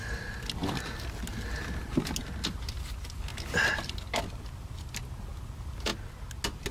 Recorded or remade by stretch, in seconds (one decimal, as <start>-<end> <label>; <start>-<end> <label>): 0.0-6.7 recorded